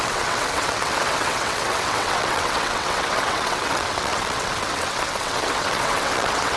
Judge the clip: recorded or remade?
remade